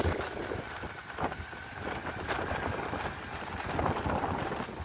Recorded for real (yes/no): yes